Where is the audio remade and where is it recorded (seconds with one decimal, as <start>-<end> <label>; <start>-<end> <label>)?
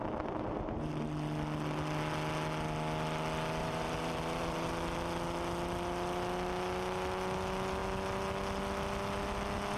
0.0-3.6 recorded; 3.6-4.7 remade; 4.7-9.8 recorded